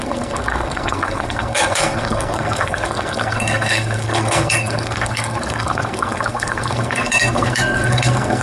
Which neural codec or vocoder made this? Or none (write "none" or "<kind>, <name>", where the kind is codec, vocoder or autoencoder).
codec, SNAC